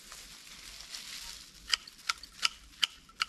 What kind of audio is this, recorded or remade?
recorded